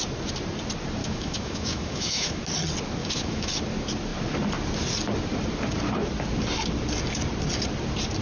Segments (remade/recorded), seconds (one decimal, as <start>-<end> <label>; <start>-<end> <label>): 0.0-1.0 recorded; 1.0-2.4 remade; 2.4-3.0 recorded; 3.0-3.5 remade; 3.5-8.2 recorded